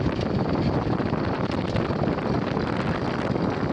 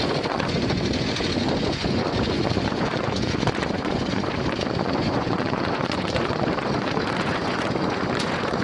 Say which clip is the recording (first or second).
first